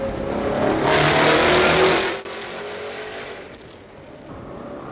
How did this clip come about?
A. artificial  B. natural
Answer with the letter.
B